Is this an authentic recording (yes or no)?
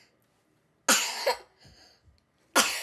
yes